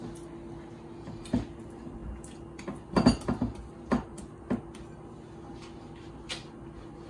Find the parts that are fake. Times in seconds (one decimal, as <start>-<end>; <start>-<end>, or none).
none